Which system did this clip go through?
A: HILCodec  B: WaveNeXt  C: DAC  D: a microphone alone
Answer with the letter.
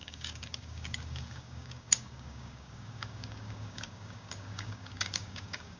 C